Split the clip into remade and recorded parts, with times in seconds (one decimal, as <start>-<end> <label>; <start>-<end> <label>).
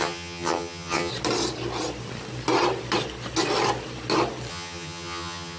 0.0-1.1 remade; 1.1-4.5 recorded; 4.5-5.6 remade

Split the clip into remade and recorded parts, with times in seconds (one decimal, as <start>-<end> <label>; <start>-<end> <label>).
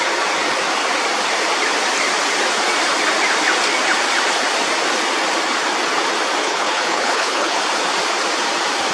0.0-6.4 recorded; 6.4-7.6 remade; 7.6-8.9 recorded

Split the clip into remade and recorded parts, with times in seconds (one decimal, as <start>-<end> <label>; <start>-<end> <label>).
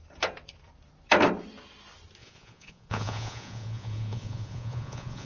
0.0-2.2 recorded; 2.2-5.3 remade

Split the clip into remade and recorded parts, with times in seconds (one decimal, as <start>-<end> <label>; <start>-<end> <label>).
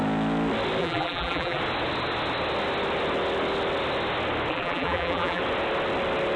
0.0-0.8 recorded; 0.8-1.6 remade; 1.6-4.5 recorded; 4.5-5.4 remade; 5.4-6.4 recorded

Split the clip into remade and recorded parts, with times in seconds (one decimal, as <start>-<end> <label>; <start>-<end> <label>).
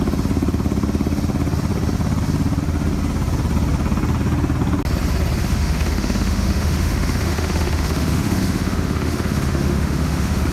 0.0-5.4 recorded; 5.4-10.5 remade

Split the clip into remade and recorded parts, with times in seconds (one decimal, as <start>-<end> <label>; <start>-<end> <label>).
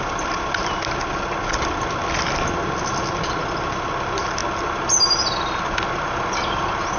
0.0-7.0 recorded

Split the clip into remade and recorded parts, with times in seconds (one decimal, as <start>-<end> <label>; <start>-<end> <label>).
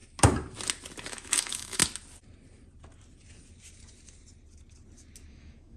0.0-1.1 recorded; 1.1-1.8 remade; 1.8-5.3 recorded; 5.3-5.8 remade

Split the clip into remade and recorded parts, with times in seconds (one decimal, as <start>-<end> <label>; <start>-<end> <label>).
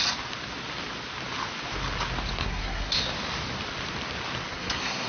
0.0-2.4 recorded; 2.4-3.0 remade; 3.0-4.5 recorded; 4.5-5.1 remade